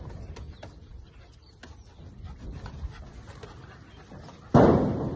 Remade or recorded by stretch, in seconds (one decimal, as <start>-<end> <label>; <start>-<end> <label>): 0.0-5.2 recorded